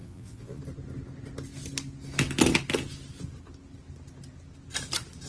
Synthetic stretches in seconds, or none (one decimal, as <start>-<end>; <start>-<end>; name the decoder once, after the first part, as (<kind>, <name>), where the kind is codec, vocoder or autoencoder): 0.0-0.6 (vocoder, Vocos)